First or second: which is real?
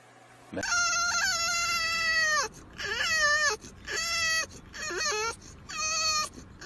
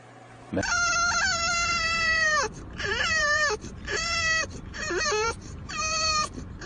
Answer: first